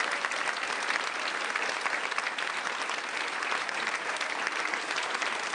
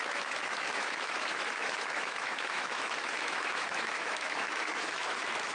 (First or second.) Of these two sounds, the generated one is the second